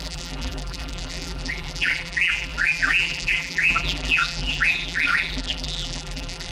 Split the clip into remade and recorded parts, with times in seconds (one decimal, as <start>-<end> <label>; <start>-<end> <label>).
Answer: 0.0-6.5 remade